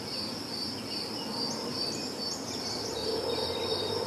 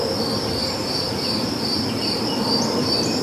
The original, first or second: first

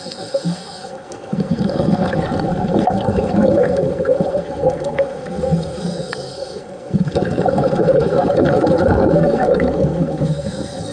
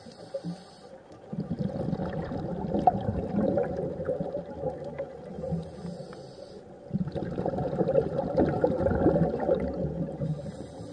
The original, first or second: second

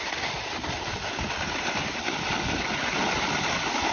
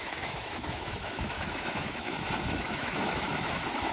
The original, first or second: first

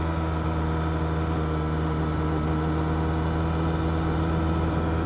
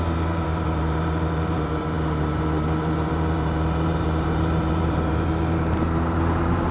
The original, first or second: first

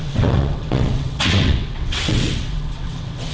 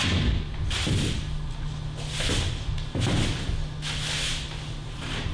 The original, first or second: second